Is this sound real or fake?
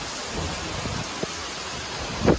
real